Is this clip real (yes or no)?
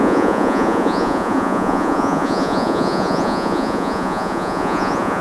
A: no